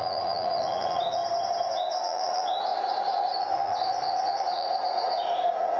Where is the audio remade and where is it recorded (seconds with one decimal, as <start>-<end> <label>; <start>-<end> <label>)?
0.0-1.2 remade; 1.2-2.0 recorded; 2.0-5.8 remade